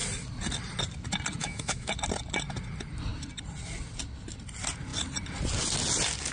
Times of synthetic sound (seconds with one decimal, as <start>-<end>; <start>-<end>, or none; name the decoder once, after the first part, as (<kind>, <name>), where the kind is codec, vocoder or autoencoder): 1.4-1.9 (autoencoder, DAC-VAE)